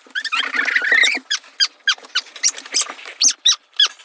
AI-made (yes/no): no